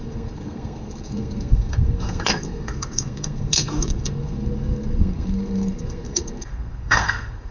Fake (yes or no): yes